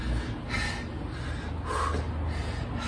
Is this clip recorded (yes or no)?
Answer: yes